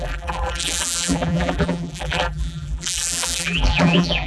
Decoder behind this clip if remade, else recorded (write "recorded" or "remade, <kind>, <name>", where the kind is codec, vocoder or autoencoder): remade, vocoder, BigVGAN v2